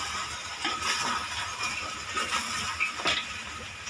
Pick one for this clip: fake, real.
real